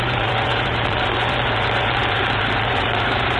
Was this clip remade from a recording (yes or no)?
yes